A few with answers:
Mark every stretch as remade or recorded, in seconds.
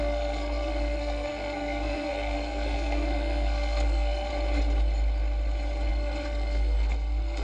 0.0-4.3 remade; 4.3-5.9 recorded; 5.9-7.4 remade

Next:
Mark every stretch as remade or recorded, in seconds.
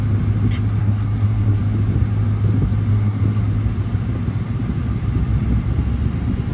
0.0-0.8 recorded; 0.8-1.6 remade; 1.6-2.9 recorded; 2.9-3.4 remade; 3.4-6.5 recorded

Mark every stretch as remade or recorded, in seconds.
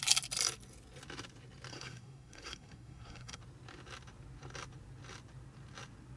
0.0-1.7 recorded; 1.7-3.4 remade; 3.4-6.2 recorded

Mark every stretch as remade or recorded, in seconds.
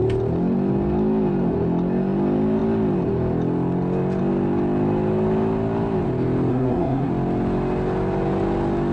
0.0-6.5 recorded; 6.5-7.1 remade; 7.1-8.9 recorded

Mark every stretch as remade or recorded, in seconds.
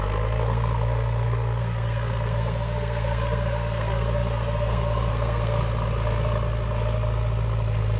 0.0-5.6 remade; 5.6-8.0 recorded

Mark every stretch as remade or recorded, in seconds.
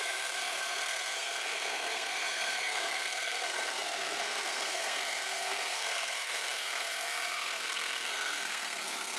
0.0-9.2 remade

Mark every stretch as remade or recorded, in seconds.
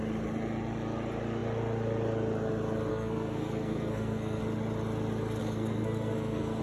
0.0-2.9 recorded; 2.9-4.4 remade; 4.4-5.4 recorded; 5.4-6.6 remade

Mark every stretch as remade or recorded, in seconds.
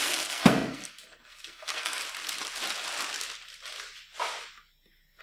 0.0-2.0 remade; 2.0-5.2 recorded